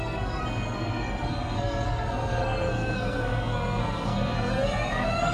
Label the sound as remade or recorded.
remade